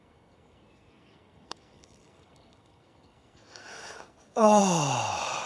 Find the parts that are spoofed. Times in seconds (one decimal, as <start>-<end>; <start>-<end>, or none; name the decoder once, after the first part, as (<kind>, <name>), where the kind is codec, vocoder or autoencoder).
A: 0.0-4.6 (codec, SNAC)